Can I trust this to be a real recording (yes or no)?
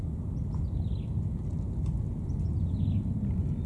yes